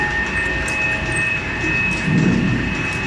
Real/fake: real